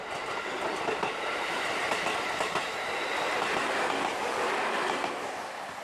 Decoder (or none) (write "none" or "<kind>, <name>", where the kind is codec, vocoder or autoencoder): none